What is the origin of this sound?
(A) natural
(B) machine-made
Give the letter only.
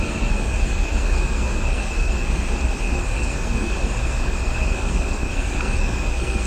B